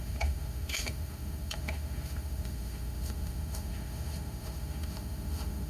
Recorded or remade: remade